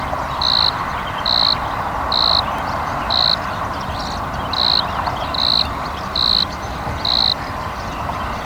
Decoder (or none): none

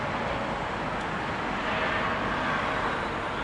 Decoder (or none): none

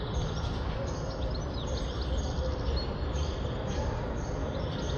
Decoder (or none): none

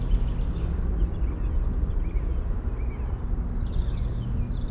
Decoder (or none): none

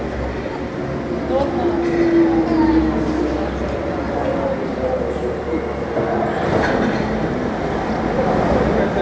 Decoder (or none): none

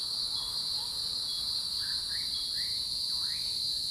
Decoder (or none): none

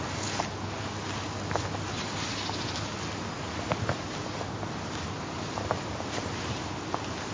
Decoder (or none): none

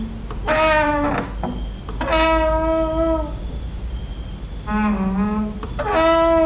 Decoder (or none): none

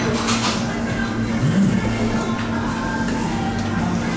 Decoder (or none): none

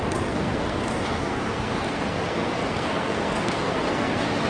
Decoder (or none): codec, SNAC